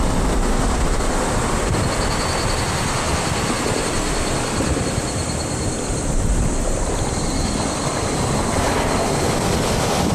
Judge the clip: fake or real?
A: real